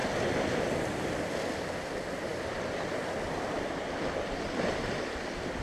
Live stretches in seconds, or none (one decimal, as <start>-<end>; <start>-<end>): 0.0-5.6